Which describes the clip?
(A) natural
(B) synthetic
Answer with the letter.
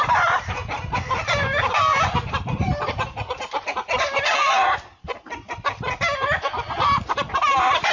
A